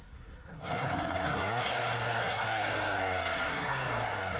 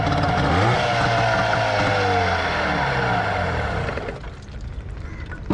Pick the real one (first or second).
second